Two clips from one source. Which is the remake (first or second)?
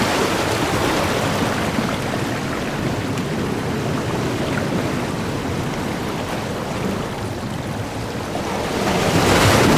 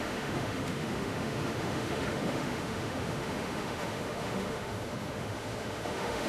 second